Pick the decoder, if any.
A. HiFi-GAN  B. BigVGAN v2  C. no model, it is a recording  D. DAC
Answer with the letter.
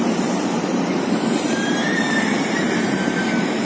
B